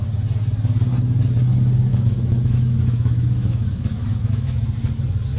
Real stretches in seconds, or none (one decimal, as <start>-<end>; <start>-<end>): 0.0-1.9; 4.5-5.4